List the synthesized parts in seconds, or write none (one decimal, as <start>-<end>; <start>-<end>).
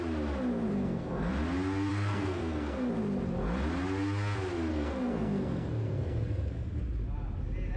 0.7-1.3; 1.9-2.9; 4.7-6.8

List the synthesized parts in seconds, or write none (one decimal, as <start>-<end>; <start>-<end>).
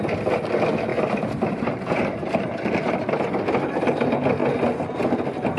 0.9-2.9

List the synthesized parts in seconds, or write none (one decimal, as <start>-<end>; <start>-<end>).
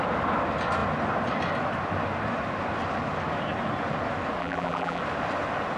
4.4-5.0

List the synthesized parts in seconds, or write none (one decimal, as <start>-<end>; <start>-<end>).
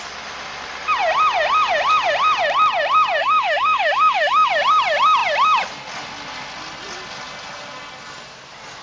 3.2-4.5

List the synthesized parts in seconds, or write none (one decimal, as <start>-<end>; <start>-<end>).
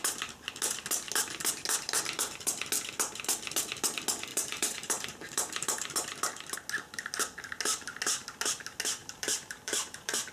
4.3-5.9; 9.0-10.3